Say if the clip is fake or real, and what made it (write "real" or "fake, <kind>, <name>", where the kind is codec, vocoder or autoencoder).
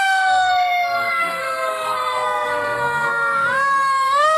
fake, codec, SNAC